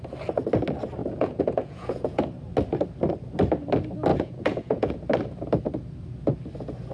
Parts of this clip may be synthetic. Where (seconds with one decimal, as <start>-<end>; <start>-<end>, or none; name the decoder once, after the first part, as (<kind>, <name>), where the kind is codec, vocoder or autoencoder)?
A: 1.0-2.2 (vocoder, Vocos); 4.1-5.0